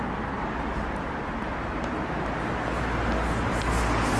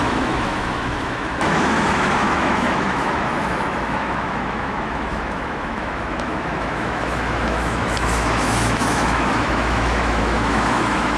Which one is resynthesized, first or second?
second